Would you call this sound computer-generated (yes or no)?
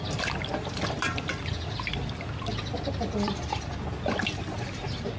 no